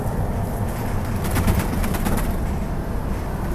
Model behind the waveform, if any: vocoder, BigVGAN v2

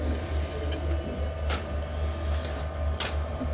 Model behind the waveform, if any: none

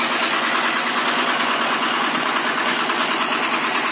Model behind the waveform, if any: vocoder, Vocos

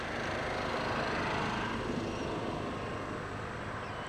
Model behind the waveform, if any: none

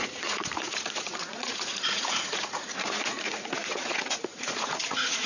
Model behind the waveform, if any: vocoder, Vocos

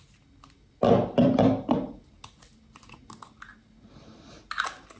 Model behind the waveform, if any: none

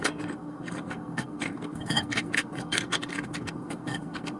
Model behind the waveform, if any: codec, SNAC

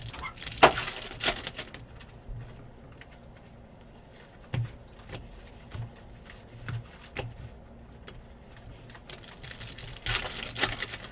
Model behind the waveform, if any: none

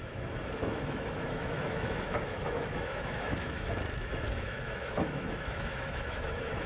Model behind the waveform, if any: autoencoder, DAC-VAE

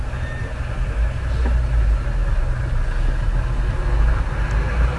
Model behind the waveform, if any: none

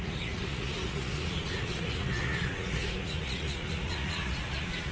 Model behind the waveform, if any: vocoder, Vocos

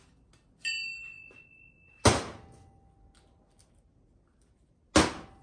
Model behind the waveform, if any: none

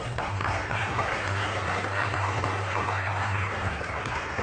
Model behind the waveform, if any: codec, SNAC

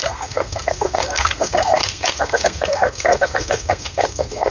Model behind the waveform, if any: codec, SNAC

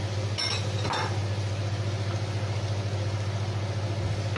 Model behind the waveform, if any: none